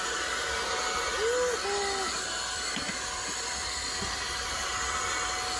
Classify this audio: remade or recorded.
recorded